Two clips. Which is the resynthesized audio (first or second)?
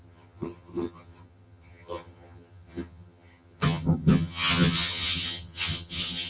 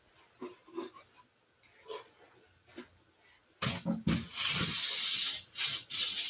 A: first